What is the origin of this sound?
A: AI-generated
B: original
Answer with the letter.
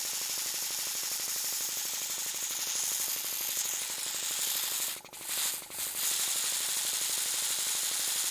B